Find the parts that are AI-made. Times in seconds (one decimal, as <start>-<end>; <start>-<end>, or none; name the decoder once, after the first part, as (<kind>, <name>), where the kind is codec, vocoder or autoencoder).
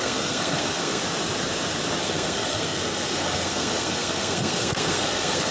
0.0-1.0 (codec, SNAC); 2.0-5.5